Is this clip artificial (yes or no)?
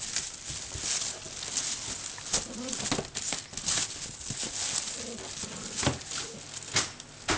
no